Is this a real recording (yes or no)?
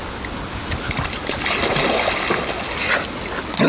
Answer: yes